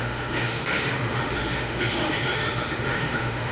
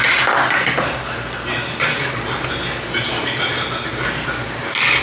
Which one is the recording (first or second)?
second